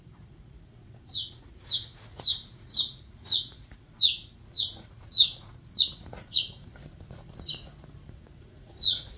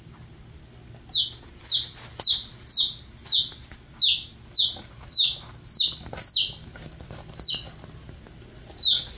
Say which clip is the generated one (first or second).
first